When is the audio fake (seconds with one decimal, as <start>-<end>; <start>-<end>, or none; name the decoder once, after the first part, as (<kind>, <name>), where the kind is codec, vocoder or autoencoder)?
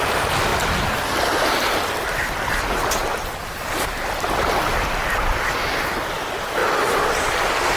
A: 3.0-5.6 (vocoder, BigVGAN v2)